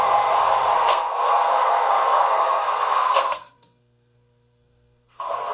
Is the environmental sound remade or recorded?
remade